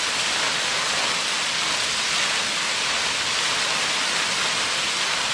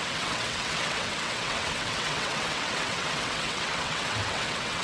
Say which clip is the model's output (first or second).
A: second